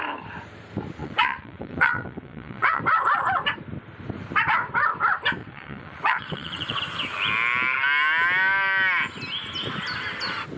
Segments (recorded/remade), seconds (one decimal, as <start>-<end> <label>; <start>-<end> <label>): 0.0-1.0 recorded; 1.0-2.8 remade; 2.8-5.4 recorded; 5.4-6.8 remade; 6.8-10.6 recorded